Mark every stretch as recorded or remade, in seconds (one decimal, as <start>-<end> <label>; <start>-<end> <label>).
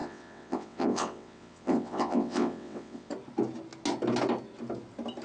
0.0-3.1 remade; 3.1-5.2 recorded